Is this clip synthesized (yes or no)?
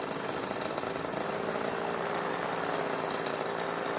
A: no